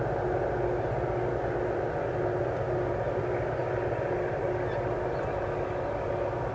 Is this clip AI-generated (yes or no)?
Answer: no